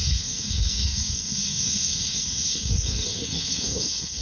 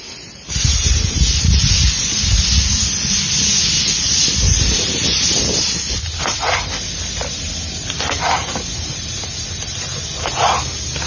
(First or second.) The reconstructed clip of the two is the first